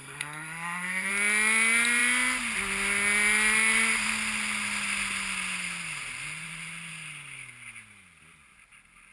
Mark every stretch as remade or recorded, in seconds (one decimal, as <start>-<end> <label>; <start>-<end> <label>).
0.0-1.1 remade; 1.1-9.1 recorded